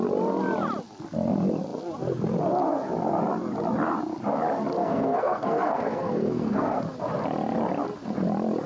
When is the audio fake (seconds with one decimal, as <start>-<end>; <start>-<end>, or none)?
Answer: 4.8-6.8